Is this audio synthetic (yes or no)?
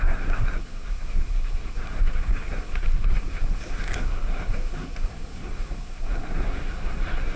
yes